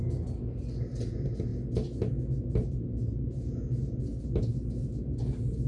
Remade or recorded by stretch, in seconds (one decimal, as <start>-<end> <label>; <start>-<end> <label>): 0.0-5.7 recorded